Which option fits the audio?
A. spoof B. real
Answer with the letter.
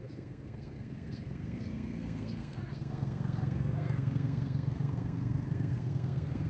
A